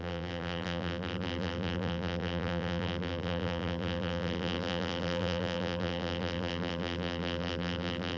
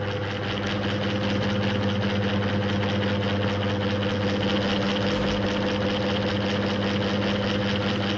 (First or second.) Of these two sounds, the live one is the second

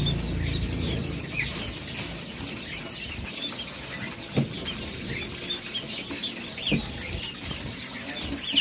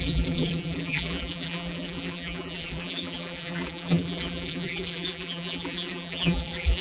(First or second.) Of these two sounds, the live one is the first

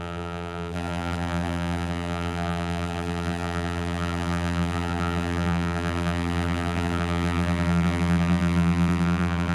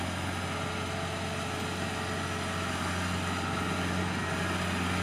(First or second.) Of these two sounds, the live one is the second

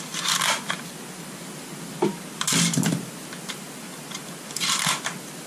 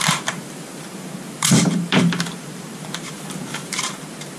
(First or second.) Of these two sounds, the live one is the first